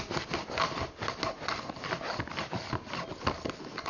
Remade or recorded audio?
recorded